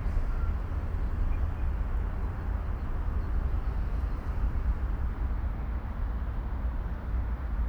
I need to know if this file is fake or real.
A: real